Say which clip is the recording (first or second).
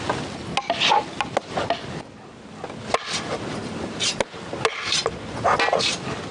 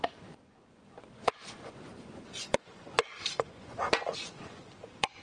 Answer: first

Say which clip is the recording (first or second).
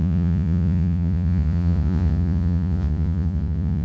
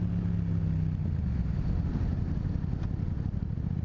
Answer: second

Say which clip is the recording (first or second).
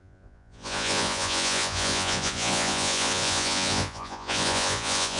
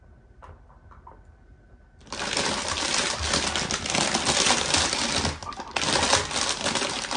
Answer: second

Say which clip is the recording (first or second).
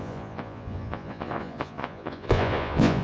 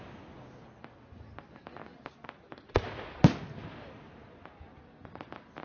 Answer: second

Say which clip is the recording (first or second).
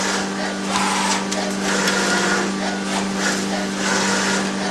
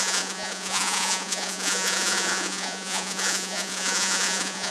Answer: first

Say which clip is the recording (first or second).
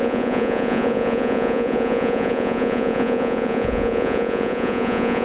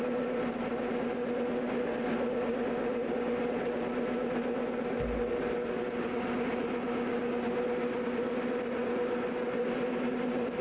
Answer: second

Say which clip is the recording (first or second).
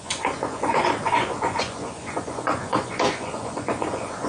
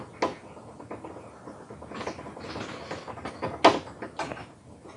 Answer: second